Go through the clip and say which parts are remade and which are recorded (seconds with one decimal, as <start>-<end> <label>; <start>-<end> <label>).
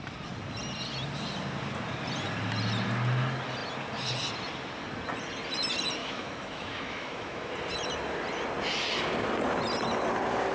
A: 0.0-6.0 recorded; 6.0-7.5 remade; 7.5-10.5 recorded